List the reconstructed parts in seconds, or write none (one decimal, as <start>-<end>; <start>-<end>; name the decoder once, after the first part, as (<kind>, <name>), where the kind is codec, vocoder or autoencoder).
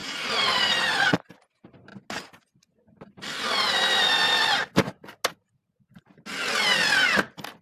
0.0-0.6 (vocoder, BigVGAN v2)